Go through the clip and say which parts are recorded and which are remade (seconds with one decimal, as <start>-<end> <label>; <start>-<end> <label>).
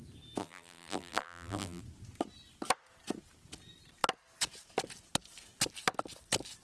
0.0-0.4 recorded; 0.4-1.8 remade; 1.8-6.6 recorded